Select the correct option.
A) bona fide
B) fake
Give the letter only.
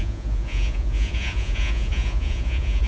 B